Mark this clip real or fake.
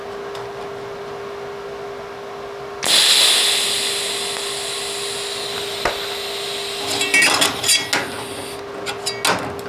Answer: real